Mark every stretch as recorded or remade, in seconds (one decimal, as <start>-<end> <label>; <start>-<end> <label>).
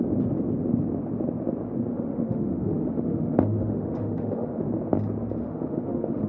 0.0-1.9 recorded; 1.9-4.6 remade; 4.6-5.4 recorded; 5.4-6.3 remade